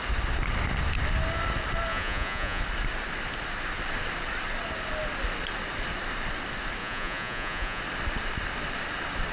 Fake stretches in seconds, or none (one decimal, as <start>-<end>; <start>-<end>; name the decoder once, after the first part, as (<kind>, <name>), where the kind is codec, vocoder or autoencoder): 1.9-2.6 (vocoder, Vocos); 6.8-7.8